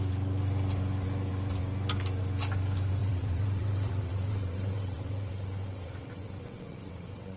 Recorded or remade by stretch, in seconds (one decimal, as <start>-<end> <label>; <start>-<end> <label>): 0.0-3.0 recorded; 3.0-7.4 remade